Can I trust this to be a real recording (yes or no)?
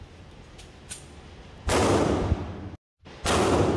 yes